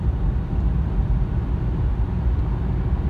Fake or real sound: real